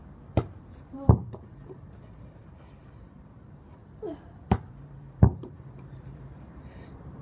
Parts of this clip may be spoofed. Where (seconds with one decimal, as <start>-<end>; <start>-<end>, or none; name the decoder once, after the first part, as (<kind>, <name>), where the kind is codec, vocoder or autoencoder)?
0.0-3.8 (vocoder, BigVGAN v2); 4.7-7.2